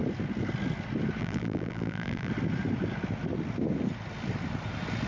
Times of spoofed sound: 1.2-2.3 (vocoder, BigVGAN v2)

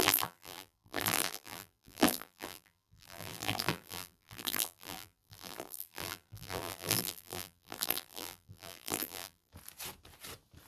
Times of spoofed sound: 0.0-9.5 (vocoder, BigVGAN v2)

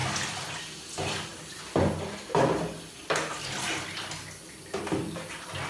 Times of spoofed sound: none